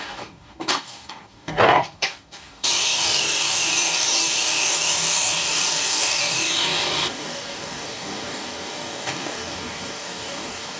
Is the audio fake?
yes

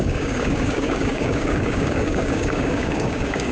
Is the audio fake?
yes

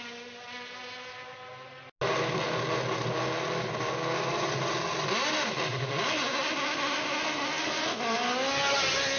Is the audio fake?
no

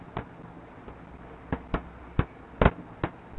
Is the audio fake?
no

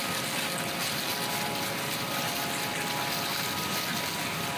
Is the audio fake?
no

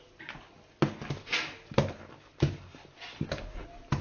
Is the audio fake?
no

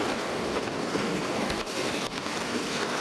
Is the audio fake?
yes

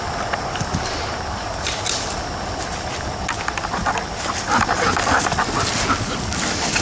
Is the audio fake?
no